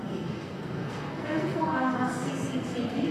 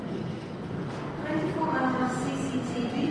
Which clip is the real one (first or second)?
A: second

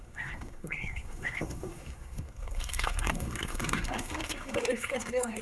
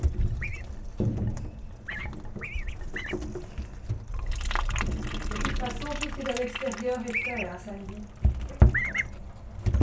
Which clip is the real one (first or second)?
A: second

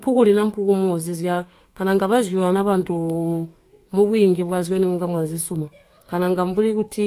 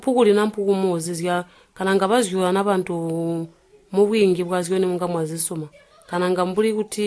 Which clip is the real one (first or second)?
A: second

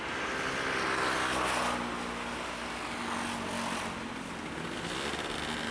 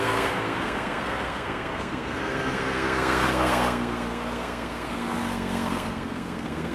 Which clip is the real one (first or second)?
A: first